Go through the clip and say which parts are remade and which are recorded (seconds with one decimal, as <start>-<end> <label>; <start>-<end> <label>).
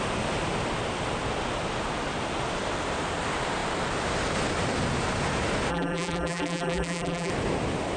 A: 0.0-5.7 recorded; 5.7-7.3 remade; 7.3-8.0 recorded